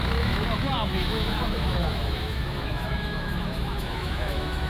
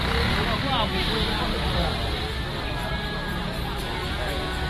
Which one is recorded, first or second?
second